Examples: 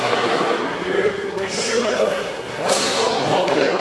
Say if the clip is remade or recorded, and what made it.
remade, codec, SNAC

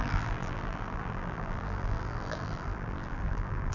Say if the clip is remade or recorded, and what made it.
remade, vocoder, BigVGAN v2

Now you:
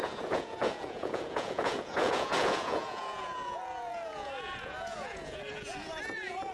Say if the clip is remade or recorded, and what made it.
remade, vocoder, Vocos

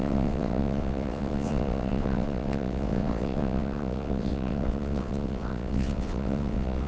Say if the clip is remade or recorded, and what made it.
remade, vocoder, WaveNeXt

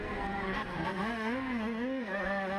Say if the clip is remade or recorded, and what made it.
remade, codec, SNAC